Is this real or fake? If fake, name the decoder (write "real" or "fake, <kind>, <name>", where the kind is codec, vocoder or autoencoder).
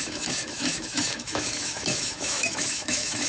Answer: fake, autoencoder, DAC-VAE